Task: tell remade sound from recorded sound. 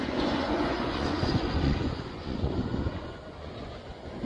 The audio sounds remade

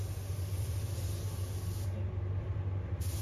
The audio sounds recorded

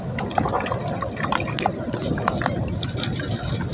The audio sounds recorded